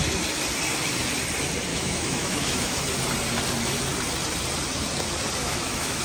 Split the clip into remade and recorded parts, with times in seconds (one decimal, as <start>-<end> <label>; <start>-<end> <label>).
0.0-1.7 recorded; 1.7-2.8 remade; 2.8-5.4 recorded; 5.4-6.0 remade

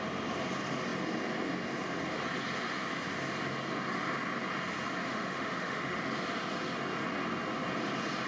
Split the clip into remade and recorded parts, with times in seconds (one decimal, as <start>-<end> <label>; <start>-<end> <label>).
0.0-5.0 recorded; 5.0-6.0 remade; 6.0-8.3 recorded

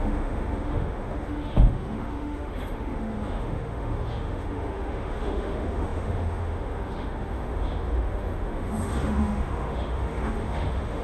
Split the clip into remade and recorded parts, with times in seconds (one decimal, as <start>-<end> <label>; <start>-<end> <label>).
0.0-11.0 remade

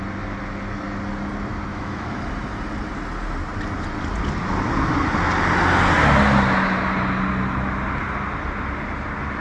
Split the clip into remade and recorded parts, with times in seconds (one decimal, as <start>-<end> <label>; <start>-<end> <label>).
0.0-1.7 recorded; 1.7-2.2 remade; 2.2-9.4 recorded